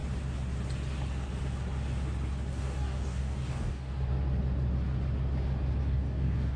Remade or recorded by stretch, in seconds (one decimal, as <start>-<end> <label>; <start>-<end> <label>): 0.0-2.5 recorded; 2.5-3.9 remade; 3.9-5.8 recorded; 5.8-6.6 remade